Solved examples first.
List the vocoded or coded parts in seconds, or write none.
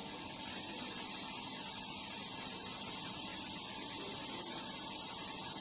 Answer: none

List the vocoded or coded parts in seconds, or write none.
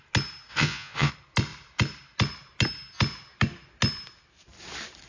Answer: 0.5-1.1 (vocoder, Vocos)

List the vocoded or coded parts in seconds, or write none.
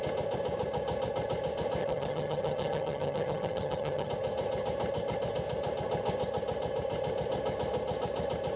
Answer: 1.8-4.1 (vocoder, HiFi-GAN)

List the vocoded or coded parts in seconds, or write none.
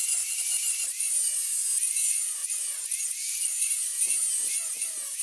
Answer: 0.0-2.4 (vocoder, BigVGAN v2); 3.0-5.2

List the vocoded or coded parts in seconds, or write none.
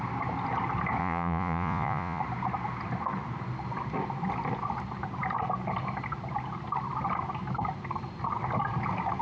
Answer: 1.0-2.2 (vocoder, Vocos)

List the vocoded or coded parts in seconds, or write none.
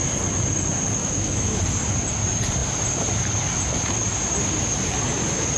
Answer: 1.0-1.6 (autoencoder, DAC-VAE)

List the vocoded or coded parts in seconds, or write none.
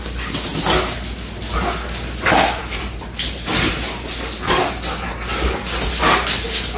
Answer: none